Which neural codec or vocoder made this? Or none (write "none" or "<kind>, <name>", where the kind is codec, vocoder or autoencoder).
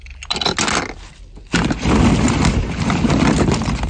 none